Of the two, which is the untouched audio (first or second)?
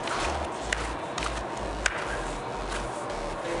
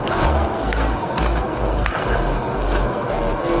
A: first